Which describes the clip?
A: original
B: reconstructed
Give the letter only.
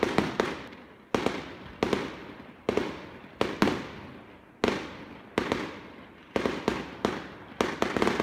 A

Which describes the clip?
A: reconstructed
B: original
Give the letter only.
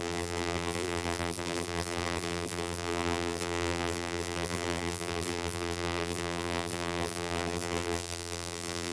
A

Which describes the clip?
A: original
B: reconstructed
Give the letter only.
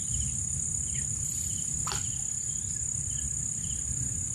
B